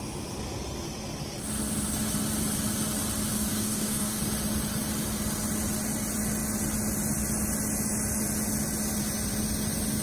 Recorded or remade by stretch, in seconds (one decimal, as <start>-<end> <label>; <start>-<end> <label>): 0.0-3.3 recorded; 3.3-4.2 remade; 4.2-10.0 recorded